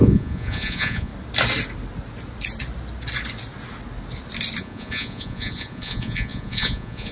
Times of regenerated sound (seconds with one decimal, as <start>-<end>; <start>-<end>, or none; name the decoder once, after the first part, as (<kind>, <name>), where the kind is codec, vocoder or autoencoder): 0.0-1.1 (vocoder, Vocos); 4.6-7.1